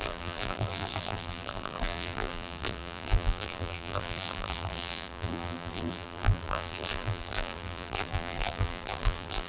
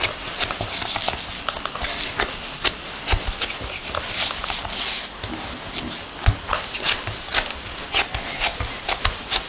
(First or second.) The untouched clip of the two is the second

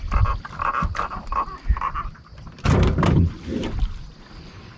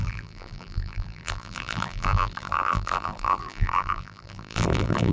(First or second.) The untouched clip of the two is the first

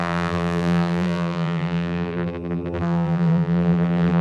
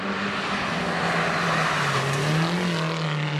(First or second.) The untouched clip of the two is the second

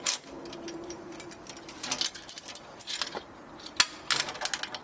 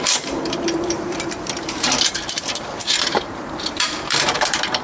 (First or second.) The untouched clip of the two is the first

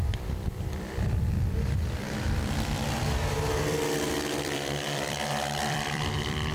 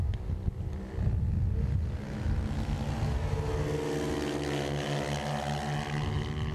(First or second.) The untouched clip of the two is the second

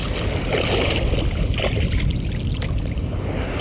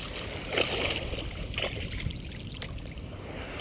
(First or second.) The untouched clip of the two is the first